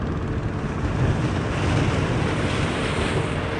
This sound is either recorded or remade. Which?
remade